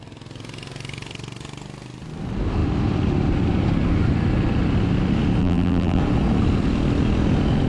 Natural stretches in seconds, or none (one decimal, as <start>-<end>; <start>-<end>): 0.0-5.4; 6.0-7.7